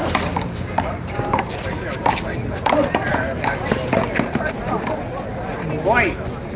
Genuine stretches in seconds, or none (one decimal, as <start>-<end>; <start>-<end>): 0.0-6.6